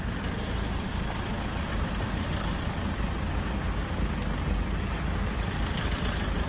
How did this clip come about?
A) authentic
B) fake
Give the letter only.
A